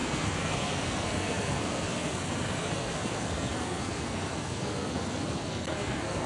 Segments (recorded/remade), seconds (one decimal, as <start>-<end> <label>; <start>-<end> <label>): 0.0-6.3 remade